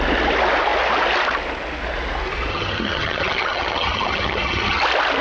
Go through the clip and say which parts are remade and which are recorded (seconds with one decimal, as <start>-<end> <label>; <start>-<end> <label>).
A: 0.0-2.5 recorded; 2.5-4.8 remade; 4.8-5.2 recorded